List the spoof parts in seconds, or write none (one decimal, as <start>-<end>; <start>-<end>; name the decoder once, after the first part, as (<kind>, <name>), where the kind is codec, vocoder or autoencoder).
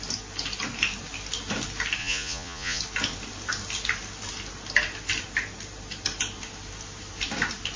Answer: 2.0-2.8 (vocoder, Vocos)